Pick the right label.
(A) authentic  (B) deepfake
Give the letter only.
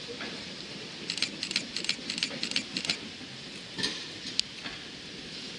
A